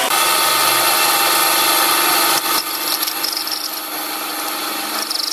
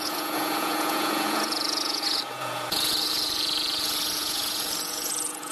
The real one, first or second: first